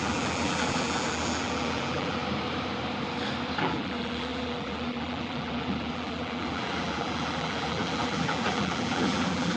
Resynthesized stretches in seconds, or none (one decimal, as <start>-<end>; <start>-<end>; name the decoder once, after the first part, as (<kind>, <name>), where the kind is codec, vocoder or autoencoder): 0.0-2.2 (vocoder, BigVGAN v2); 3.6-9.6